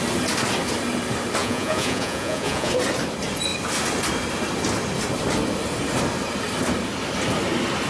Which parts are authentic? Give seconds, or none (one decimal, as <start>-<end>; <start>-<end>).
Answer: 0.0-1.4; 2.7-7.9